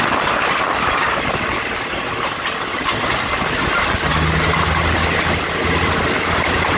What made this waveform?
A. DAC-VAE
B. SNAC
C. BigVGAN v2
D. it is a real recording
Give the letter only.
D